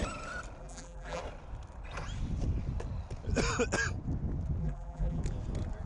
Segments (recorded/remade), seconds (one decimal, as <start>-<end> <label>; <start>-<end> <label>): 0.0-0.6 recorded; 0.6-1.2 remade; 1.2-4.6 recorded; 4.6-5.2 remade; 5.2-5.9 recorded